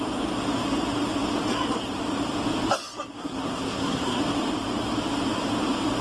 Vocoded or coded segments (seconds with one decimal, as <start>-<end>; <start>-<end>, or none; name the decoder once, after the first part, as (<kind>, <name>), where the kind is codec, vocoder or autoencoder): 3.2-4.2 (codec, SNAC)